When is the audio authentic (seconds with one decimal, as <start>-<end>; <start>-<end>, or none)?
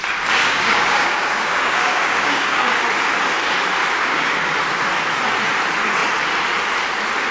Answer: 0.0-0.4; 2.7-3.9; 4.5-7.3